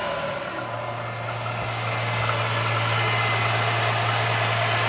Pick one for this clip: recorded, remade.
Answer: recorded